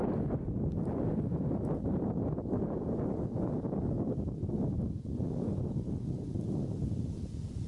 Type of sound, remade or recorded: recorded